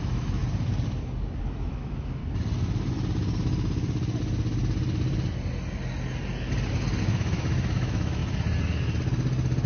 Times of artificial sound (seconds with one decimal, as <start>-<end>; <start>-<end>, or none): 0.0-0.4; 1.4-2.2; 7.0-8.2